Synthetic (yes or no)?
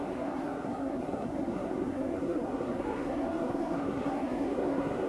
yes